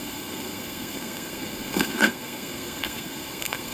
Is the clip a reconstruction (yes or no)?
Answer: yes